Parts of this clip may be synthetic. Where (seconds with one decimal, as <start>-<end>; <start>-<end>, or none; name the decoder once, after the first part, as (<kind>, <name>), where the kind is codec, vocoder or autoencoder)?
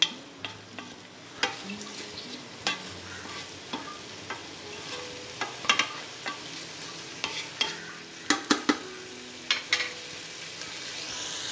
none